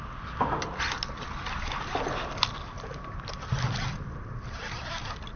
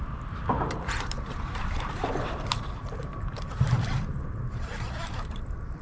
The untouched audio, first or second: first